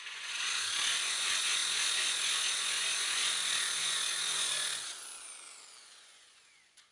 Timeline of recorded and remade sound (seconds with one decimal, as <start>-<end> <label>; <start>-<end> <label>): 0.0-5.0 remade; 5.0-5.8 recorded; 5.8-6.9 remade